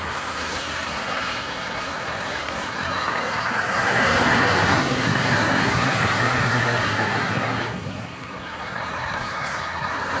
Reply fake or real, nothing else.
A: fake